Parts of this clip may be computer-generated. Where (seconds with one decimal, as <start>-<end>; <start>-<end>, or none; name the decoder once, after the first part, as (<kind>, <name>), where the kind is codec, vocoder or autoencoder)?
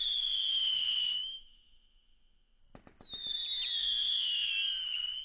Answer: 0.5-2.6 (autoencoder, DAC-VAE); 3.8-4.5